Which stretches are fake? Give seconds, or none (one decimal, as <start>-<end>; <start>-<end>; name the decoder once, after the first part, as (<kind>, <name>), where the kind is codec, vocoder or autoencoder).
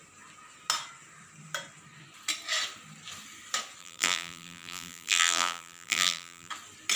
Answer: 3.8-6.5 (vocoder, BigVGAN v2)